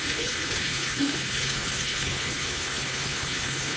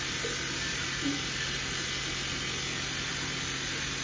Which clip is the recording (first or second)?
second